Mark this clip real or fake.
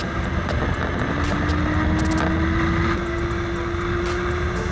real